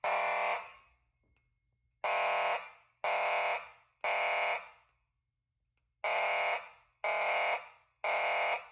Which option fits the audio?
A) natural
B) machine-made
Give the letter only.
A